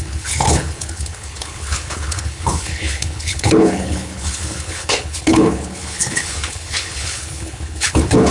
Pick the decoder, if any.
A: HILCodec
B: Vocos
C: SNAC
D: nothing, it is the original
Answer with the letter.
A